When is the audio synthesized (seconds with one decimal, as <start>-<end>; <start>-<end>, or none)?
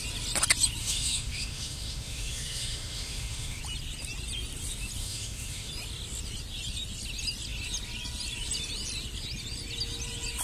0.8-3.6; 5.0-5.7